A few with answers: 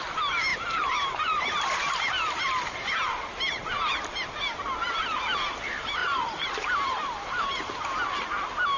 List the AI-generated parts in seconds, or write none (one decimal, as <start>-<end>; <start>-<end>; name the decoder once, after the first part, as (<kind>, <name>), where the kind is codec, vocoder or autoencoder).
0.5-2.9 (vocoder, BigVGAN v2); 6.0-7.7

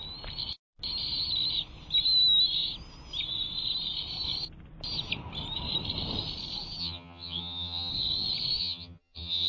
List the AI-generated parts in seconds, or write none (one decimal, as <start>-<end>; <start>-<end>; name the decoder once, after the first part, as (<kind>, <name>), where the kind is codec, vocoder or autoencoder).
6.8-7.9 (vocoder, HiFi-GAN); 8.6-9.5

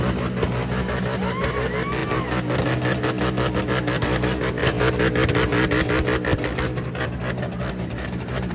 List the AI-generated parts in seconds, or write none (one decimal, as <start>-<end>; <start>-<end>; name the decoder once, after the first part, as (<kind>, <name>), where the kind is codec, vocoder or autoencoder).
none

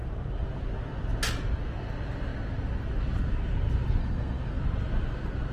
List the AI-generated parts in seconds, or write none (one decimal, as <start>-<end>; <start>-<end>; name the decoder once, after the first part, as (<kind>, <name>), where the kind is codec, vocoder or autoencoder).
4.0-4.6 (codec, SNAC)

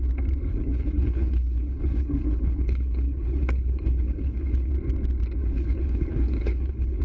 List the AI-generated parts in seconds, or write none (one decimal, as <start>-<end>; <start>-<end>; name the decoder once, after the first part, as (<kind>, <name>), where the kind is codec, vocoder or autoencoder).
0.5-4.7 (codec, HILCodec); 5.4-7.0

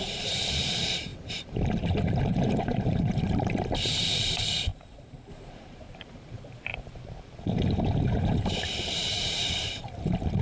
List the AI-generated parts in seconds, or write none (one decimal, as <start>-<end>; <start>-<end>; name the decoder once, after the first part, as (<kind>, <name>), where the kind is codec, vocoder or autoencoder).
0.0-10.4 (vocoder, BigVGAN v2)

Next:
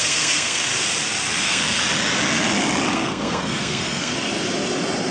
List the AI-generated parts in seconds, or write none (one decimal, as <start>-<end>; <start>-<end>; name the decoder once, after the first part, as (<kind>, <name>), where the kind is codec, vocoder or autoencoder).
0.0-0.7 (codec, SNAC); 1.4-1.8; 2.9-4.1

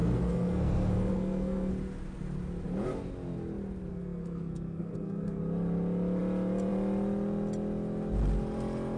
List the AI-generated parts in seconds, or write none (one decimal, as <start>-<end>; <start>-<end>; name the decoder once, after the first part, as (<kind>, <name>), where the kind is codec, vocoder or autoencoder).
0.0-1.7 (codec, SNAC); 3.9-5.4